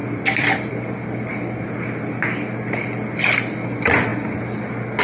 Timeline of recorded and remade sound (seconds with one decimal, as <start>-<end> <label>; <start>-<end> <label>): 0.0-0.7 remade; 0.7-5.0 recorded